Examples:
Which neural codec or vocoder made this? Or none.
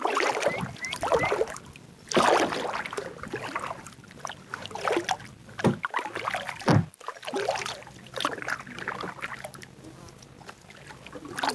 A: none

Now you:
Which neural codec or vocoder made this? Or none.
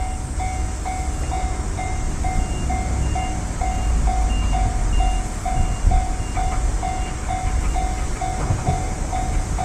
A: none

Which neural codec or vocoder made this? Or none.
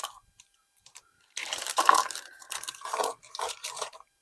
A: vocoder, BigVGAN v2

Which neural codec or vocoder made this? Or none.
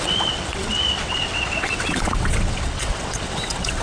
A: vocoder, WaveNeXt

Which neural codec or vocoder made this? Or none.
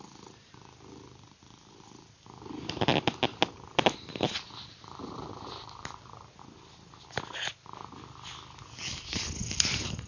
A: none